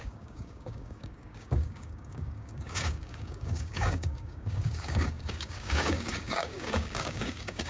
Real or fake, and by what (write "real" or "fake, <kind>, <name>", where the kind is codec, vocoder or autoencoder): fake, codec, DAC